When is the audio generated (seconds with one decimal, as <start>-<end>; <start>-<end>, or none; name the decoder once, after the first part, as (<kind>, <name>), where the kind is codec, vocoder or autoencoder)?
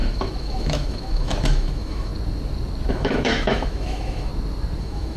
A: 0.0-2.1 (autoencoder, DAC-VAE); 2.9-4.3; 4.8-5.2